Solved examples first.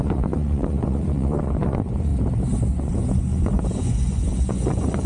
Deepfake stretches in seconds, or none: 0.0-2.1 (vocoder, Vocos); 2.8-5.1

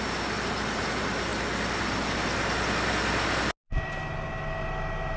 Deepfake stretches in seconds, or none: none

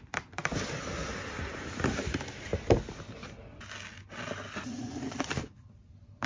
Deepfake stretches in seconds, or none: 0.0-0.4 (vocoder, BigVGAN v2); 1.9-2.5; 4.8-6.3

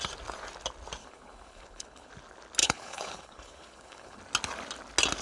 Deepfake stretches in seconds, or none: 1.0-2.1 (codec, HILCodec); 2.6-4.2